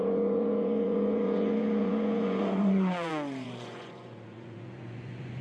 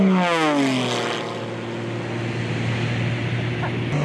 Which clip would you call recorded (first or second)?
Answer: second